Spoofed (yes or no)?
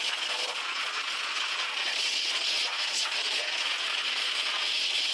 yes